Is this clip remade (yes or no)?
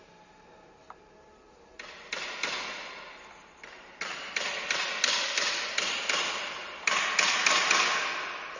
no